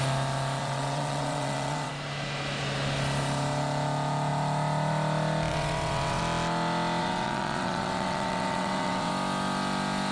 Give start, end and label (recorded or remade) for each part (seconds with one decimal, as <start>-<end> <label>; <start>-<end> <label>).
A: 0.0-0.6 recorded; 0.6-1.9 remade; 1.9-5.5 recorded; 5.5-6.2 remade; 6.2-7.0 recorded; 7.0-9.1 remade; 9.1-10.1 recorded